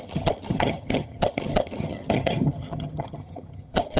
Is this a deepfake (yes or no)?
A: yes